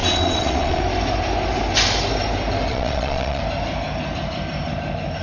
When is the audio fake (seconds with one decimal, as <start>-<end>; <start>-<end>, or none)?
0.0-0.8; 2.7-3.4